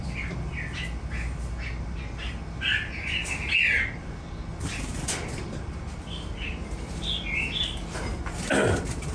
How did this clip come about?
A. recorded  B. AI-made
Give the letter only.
A